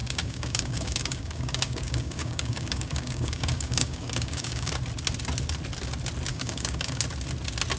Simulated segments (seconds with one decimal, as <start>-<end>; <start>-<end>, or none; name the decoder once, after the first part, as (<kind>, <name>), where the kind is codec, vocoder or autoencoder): 0.0-4.7 (codec, DAC); 6.3-7.0